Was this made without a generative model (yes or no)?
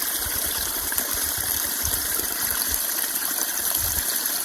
no